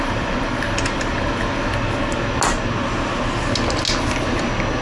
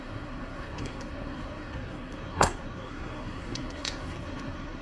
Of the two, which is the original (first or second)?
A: first